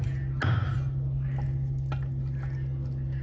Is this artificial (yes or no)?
no